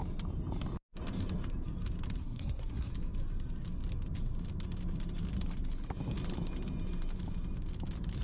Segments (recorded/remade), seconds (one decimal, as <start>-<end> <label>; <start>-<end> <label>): 0.0-2.2 recorded; 2.2-2.9 remade; 2.9-8.2 recorded